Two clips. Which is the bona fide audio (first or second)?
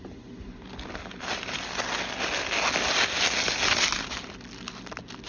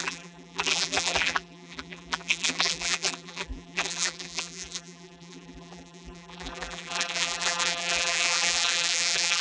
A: first